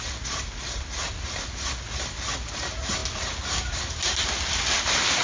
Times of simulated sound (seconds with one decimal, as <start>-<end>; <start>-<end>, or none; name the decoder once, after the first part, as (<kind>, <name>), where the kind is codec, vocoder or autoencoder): none